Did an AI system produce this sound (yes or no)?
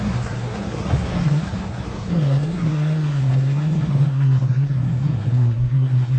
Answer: yes